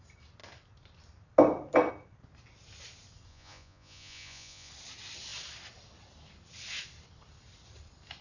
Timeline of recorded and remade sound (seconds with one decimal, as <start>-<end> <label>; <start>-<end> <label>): 0.0-3.3 recorded; 3.3-4.7 remade; 4.7-8.2 recorded